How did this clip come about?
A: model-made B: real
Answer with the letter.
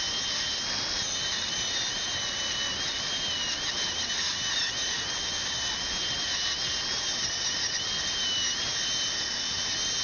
B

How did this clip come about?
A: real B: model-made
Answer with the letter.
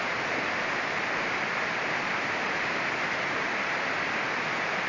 A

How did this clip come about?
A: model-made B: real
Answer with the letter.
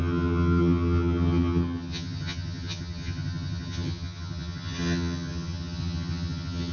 A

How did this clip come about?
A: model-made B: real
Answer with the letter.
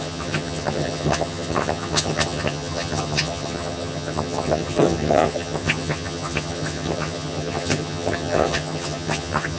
A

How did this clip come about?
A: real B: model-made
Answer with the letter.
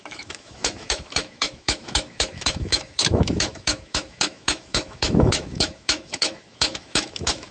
B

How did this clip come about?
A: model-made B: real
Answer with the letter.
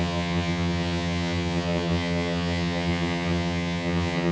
A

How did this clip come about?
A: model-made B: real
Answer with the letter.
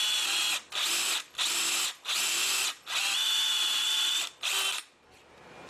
B